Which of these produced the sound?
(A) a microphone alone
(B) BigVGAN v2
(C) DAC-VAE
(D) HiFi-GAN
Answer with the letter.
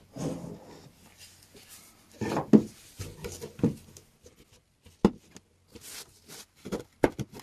A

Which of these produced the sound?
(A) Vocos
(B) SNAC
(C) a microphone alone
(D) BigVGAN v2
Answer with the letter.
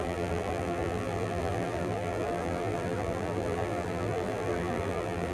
D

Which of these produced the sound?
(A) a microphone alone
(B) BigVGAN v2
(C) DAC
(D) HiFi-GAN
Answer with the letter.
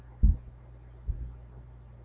A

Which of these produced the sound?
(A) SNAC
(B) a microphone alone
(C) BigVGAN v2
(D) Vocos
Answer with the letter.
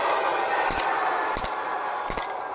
B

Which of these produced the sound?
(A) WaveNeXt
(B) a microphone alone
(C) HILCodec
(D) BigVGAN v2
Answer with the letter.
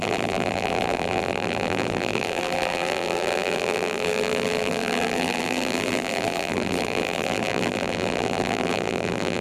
D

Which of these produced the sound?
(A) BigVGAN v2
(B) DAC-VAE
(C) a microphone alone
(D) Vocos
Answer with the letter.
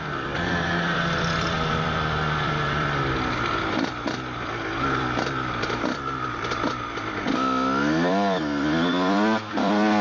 A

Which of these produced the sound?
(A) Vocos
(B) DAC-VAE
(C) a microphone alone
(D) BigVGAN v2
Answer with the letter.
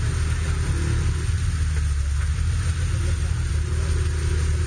C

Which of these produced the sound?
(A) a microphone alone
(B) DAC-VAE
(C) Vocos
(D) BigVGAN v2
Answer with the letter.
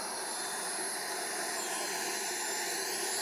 A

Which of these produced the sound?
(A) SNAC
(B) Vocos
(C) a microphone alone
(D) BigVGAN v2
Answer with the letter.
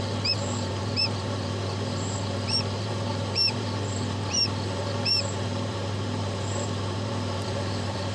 D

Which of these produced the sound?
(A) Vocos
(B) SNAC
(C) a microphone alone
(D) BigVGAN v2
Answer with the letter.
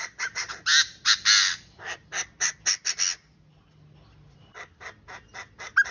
C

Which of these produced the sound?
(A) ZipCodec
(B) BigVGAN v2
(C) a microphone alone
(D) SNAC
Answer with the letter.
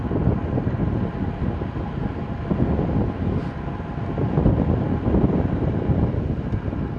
C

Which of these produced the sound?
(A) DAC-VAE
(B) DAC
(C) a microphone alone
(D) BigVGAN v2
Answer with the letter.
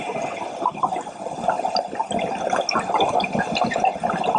C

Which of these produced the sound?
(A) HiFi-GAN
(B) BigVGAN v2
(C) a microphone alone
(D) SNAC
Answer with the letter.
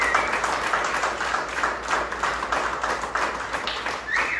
C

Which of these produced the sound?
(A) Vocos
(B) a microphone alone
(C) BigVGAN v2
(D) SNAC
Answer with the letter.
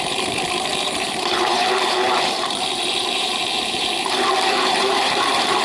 C